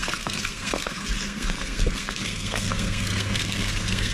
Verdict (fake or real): fake